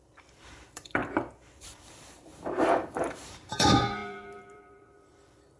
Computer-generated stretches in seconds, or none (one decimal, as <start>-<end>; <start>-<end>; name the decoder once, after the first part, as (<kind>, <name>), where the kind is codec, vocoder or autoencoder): 0.0-1.0 (vocoder, BigVGAN v2); 1.6-5.6